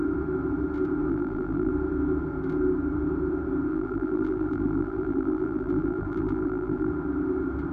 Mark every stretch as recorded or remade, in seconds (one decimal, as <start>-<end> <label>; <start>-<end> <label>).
0.0-1.1 recorded; 1.1-1.7 remade; 1.7-3.7 recorded; 3.7-6.9 remade; 6.9-7.7 recorded